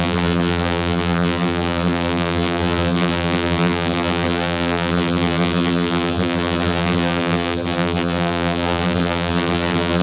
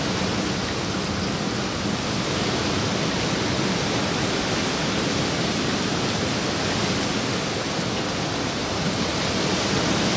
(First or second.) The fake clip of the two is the first